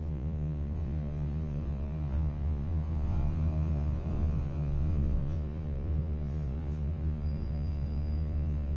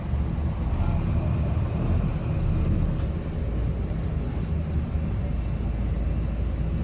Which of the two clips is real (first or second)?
second